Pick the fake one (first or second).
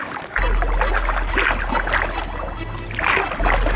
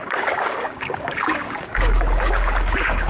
second